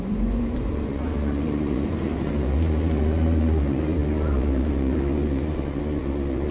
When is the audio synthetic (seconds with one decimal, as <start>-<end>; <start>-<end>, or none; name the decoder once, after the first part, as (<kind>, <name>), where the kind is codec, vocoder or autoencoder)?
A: 0.0-6.5 (vocoder, Vocos)